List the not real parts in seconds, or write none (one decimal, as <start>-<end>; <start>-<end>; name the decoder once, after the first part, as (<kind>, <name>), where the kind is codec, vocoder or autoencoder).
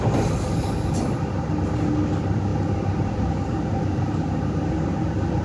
none